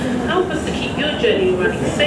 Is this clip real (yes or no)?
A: yes